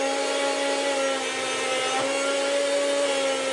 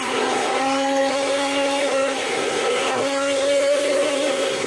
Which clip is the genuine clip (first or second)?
first